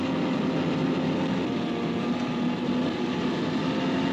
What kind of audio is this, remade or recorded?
recorded